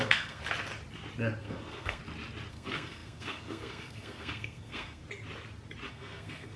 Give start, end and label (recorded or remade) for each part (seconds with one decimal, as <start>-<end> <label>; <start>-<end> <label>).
0.0-0.4 remade; 0.4-1.4 recorded; 1.4-2.0 remade; 2.0-2.5 recorded; 2.5-5.0 remade; 5.0-5.9 recorded; 5.9-6.6 remade